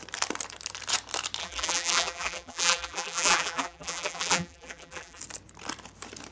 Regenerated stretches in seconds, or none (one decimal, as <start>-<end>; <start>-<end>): 1.4-5.2